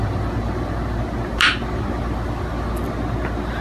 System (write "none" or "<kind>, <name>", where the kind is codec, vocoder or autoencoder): none